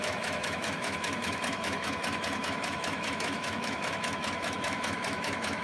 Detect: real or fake fake